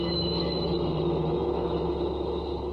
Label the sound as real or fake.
fake